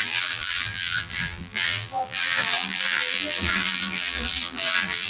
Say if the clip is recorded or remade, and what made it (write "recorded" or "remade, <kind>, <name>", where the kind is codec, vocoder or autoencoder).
remade, vocoder, BigVGAN v2